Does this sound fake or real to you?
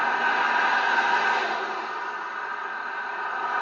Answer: real